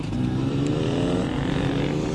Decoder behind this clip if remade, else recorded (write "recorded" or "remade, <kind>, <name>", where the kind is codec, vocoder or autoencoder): recorded